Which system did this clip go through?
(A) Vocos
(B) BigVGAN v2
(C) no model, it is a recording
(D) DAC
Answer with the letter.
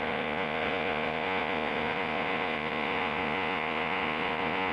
A